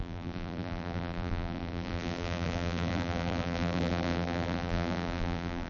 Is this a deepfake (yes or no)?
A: yes